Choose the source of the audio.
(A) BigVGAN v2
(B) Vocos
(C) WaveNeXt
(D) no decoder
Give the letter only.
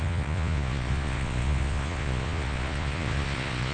B